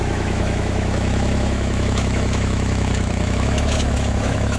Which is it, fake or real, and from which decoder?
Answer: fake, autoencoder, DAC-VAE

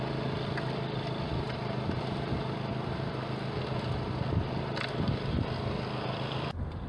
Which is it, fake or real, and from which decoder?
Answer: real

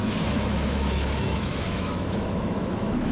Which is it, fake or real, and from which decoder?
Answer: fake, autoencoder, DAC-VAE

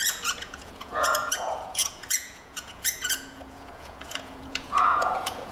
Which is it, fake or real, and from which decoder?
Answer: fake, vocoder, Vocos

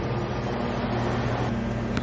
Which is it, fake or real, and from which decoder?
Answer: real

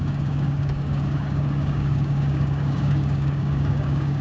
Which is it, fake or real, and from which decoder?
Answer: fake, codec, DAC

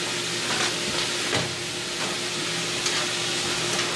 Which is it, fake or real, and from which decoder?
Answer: real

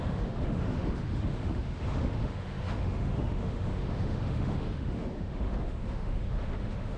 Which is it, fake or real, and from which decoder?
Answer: fake, autoencoder, DAC-VAE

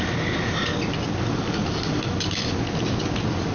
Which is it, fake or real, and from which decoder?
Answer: real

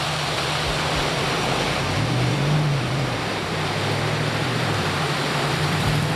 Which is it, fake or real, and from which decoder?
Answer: fake, vocoder, BigVGAN v2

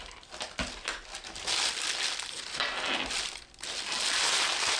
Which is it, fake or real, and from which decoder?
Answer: real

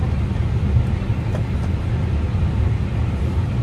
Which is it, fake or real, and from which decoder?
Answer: real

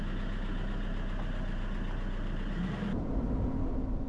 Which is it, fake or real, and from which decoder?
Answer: real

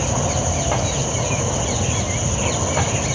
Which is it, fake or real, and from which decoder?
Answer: real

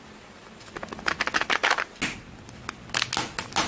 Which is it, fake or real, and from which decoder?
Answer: real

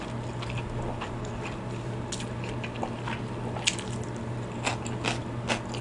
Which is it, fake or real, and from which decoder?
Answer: real